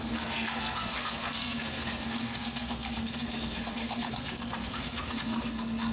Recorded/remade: remade